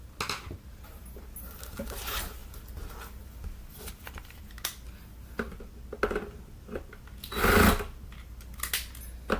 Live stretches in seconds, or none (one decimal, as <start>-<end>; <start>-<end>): 0.0-9.4